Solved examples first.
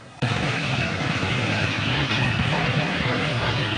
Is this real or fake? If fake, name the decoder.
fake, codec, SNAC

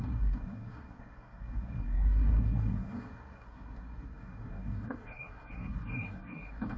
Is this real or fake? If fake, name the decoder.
fake, codec, SNAC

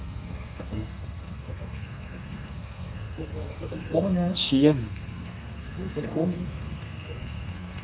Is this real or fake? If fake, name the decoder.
fake, codec, SNAC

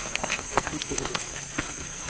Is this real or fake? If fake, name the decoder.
fake, codec, SNAC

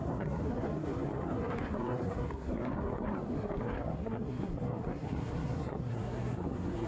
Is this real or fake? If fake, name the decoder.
fake, codec, SNAC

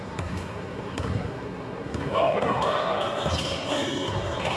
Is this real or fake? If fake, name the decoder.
fake, codec, SNAC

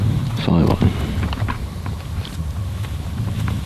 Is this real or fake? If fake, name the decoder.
real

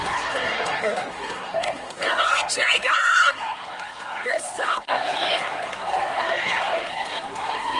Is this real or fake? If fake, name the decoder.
fake, codec, SNAC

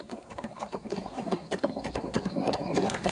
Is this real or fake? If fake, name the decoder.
fake, codec, SNAC